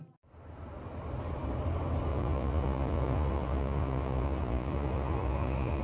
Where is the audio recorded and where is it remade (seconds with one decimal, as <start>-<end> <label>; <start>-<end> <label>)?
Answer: 0.0-2.1 recorded; 2.1-5.8 remade